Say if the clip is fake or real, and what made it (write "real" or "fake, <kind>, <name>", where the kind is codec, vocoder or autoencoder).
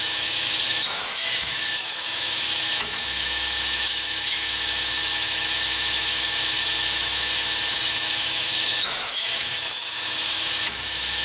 fake, autoencoder, DAC-VAE